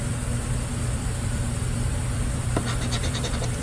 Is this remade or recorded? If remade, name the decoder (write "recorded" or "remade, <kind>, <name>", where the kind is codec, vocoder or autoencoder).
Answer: remade, vocoder, BigVGAN v2